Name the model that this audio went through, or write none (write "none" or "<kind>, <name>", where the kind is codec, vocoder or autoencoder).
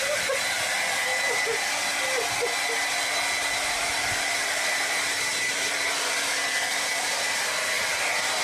none